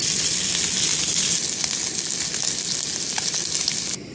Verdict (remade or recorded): recorded